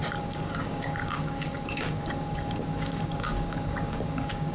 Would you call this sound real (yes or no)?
no